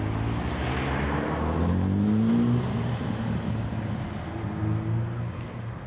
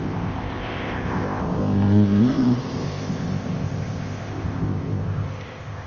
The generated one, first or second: second